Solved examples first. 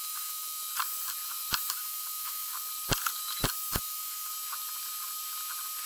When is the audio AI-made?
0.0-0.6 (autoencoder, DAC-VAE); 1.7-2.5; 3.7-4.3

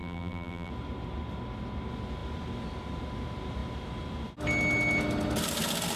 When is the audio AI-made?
0.0-0.7 (vocoder, BigVGAN v2)

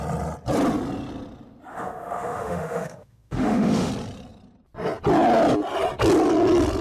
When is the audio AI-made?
1.7-3.9 (autoencoder, DAC-VAE)

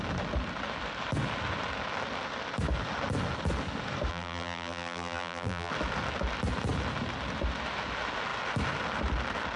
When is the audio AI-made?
4.1-5.7 (vocoder, BigVGAN v2)

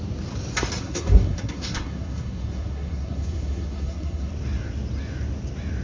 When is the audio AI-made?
0.8-4.3 (codec, SNAC)